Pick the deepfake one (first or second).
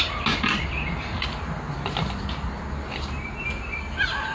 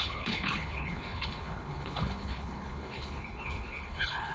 second